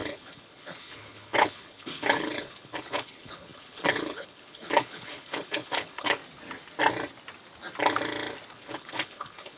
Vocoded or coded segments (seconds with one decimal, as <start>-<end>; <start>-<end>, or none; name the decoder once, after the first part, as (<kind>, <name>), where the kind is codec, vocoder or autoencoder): 0.0-6.2 (codec, HILCodec); 8.5-9.6